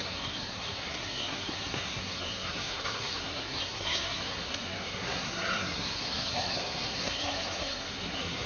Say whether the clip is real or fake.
fake